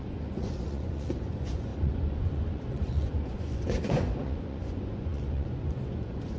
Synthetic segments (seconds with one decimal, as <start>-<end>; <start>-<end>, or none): 0.0-6.4

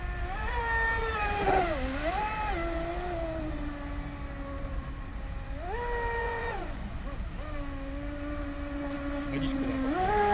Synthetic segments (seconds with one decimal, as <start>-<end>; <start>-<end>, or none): 6.2-7.0

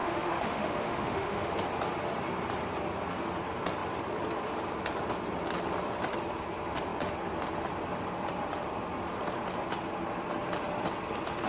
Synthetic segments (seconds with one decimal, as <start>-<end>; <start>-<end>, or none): 0.0-1.5

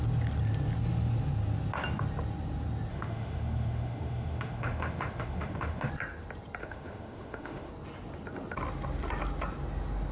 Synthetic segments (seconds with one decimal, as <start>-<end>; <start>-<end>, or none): 2.9-5.9; 6.6-7.7

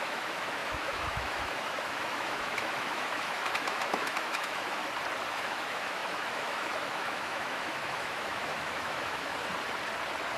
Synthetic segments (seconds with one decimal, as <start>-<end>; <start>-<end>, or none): 0.0-4.8; 5.3-9.3

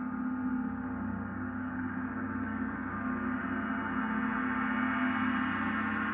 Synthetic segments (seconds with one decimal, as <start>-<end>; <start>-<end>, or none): 0.5-3.4

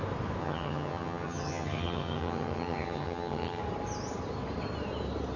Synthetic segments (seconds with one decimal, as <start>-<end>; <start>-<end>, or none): 0.4-3.6

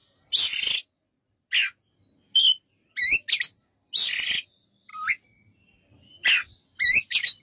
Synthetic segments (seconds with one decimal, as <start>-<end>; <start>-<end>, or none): none